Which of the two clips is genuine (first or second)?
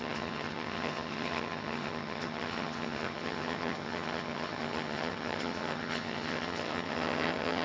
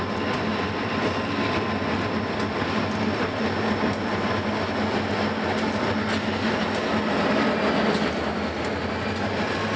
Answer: second